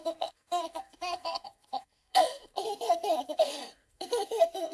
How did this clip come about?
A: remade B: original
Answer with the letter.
A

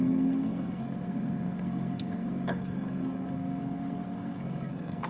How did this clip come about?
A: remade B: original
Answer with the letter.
A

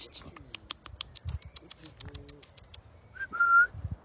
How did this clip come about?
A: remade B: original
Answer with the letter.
B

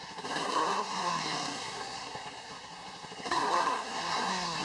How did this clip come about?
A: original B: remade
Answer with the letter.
B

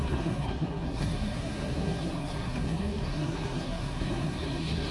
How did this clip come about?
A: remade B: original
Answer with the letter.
A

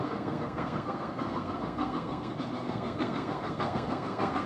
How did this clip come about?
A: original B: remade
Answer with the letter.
B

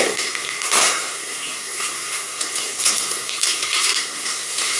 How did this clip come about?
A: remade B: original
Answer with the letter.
A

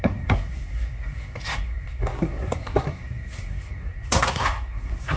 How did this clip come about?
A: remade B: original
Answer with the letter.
A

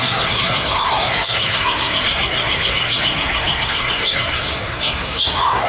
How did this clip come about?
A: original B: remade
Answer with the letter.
B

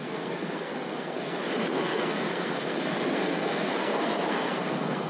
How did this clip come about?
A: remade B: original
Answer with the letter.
A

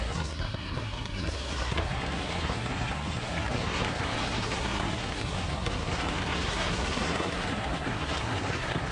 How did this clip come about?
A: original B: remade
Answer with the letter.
B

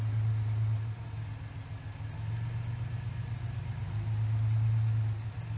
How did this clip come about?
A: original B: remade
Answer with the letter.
A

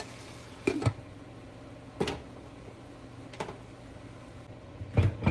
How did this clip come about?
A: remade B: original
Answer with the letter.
B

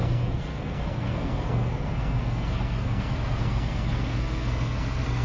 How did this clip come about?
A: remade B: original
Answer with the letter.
A